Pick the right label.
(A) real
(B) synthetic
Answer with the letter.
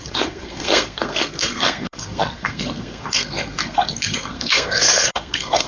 B